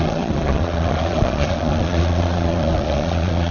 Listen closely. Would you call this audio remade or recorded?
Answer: remade